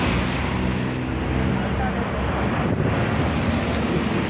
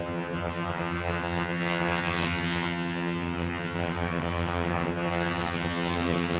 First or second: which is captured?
first